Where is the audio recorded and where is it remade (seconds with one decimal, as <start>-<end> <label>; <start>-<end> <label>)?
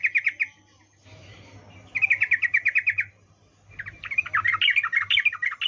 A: 0.0-5.7 recorded